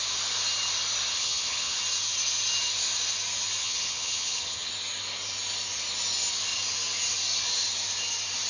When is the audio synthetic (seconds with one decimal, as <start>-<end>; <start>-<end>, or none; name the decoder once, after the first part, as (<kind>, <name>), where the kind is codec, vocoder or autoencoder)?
1.1-1.8 (vocoder, HiFi-GAN); 3.6-4.7